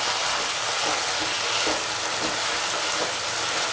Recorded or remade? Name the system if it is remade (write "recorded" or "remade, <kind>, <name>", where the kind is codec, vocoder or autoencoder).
recorded